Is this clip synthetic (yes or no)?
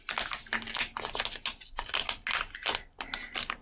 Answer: no